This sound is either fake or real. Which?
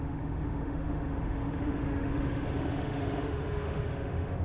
fake